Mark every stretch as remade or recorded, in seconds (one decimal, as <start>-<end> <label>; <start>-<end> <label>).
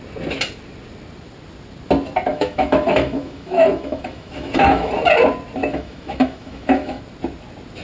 0.0-2.3 recorded; 2.3-4.9 remade; 4.9-5.6 recorded; 5.6-7.0 remade; 7.0-7.8 recorded